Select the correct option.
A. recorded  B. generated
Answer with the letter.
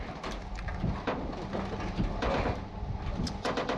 A